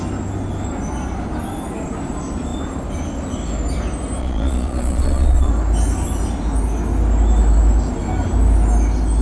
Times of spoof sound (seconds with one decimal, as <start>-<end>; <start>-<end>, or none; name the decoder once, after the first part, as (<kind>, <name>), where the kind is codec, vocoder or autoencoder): 4.2-5.5 (vocoder, Vocos)